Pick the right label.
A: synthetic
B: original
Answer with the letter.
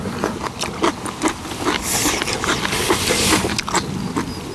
B